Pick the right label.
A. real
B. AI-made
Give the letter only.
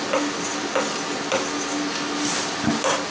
A